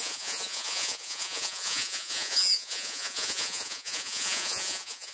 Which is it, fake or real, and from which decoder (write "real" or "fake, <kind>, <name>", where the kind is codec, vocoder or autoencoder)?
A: fake, vocoder, Vocos